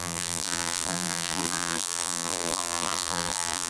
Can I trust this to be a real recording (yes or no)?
no